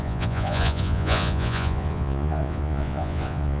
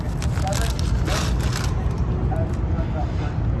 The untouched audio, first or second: second